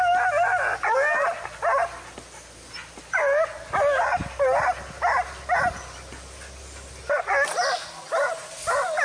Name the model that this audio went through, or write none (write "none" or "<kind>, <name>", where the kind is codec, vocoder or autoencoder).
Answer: none